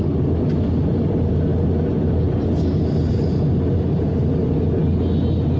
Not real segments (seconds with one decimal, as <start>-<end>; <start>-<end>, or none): none